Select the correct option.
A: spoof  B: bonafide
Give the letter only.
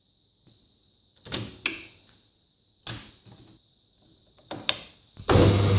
B